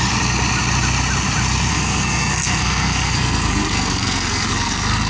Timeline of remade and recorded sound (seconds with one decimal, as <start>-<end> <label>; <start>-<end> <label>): 0.0-1.7 recorded; 1.7-5.1 remade